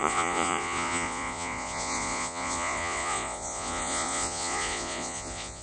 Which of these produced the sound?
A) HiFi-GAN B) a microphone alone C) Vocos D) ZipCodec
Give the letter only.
C